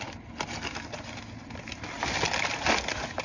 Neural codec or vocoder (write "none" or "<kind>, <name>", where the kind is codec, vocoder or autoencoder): none